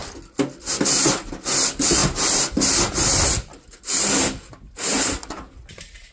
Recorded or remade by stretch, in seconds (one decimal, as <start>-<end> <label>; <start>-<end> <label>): 0.0-6.1 recorded